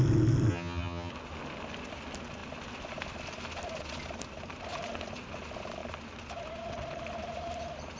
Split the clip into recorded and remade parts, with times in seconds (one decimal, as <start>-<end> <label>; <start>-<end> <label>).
0.0-0.5 recorded; 0.5-1.1 remade; 1.1-8.0 recorded